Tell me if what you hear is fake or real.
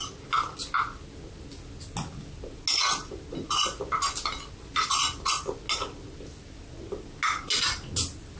real